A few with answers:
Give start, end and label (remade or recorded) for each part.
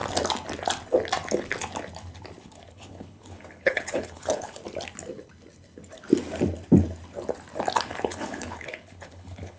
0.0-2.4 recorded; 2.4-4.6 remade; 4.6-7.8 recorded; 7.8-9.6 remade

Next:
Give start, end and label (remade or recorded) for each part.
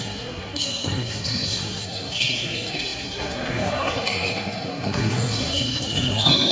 0.0-6.5 remade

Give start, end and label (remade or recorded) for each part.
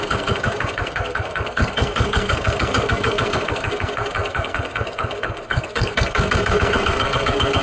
0.0-7.6 remade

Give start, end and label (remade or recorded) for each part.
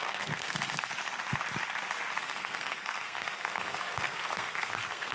0.0-0.9 remade; 0.9-2.2 recorded; 2.2-5.1 remade